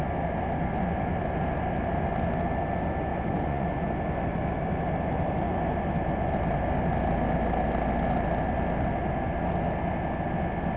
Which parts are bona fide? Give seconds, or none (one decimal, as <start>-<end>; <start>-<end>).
0.0-3.1; 3.7-10.8